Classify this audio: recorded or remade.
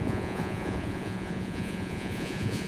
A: remade